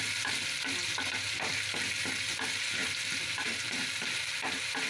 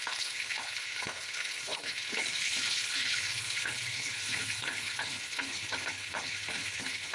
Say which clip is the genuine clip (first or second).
first